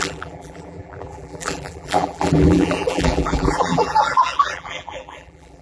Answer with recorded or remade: remade